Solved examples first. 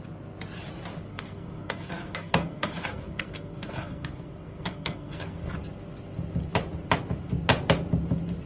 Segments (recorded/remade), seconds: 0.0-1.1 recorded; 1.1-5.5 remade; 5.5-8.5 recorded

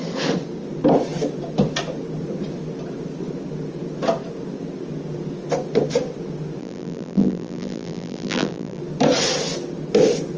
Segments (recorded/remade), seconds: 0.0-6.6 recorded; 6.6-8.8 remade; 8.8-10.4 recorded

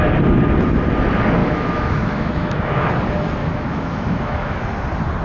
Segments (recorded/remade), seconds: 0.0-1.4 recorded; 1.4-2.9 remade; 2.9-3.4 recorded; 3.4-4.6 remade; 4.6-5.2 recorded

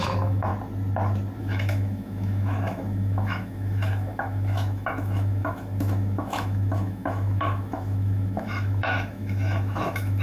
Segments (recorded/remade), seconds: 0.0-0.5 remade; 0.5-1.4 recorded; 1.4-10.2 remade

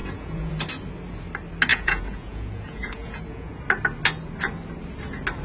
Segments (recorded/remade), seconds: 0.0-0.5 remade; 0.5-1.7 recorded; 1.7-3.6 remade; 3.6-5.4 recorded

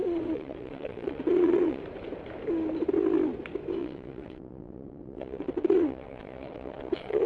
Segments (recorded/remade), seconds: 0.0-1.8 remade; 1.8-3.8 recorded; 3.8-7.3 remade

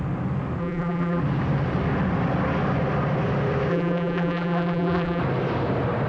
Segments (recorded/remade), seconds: 0.0-0.6 recorded; 0.6-1.2 remade; 1.2-3.7 recorded; 3.7-5.2 remade; 5.2-6.1 recorded